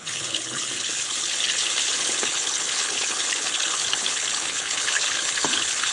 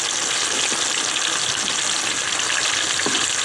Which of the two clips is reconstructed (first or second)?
first